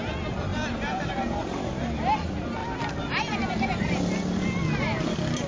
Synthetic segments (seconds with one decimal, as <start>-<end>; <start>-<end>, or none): 0.5-1.1

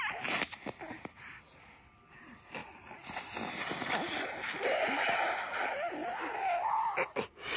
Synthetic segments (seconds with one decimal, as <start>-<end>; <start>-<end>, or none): none

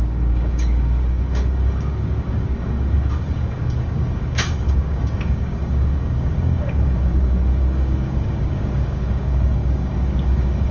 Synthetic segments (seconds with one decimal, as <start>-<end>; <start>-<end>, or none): 0.0-10.7

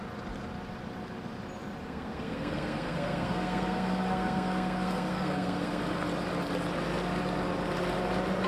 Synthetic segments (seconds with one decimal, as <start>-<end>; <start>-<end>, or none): 1.8-5.8

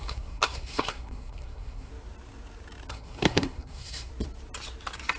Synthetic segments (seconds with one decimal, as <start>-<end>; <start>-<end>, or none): 0.0-1.9; 2.9-4.1

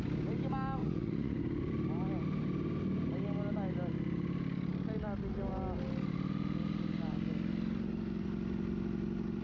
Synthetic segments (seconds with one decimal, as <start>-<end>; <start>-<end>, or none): 0.8-1.4